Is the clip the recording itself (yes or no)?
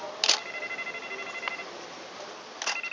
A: yes